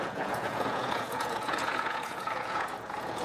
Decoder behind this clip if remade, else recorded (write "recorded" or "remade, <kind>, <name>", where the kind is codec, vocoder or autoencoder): remade, vocoder, Vocos